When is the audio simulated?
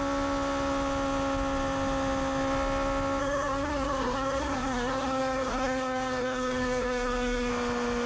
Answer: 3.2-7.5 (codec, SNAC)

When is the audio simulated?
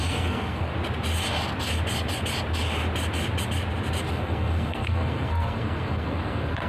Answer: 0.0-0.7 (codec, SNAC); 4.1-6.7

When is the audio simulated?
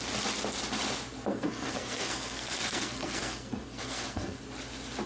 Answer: 1.3-4.4 (codec, SNAC)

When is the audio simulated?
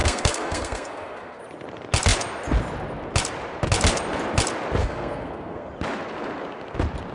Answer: 0.0-1.4 (codec, SNAC); 4.8-5.7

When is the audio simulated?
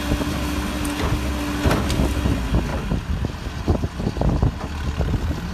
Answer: none